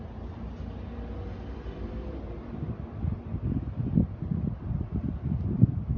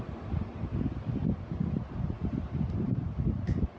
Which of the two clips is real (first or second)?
first